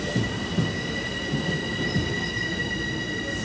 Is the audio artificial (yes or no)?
no